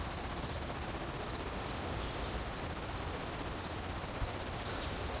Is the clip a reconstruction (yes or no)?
no